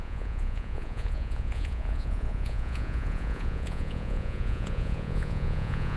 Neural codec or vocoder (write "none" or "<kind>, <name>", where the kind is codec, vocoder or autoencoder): vocoder, Vocos